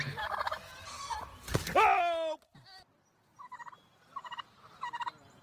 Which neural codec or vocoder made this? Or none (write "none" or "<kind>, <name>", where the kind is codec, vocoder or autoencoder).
none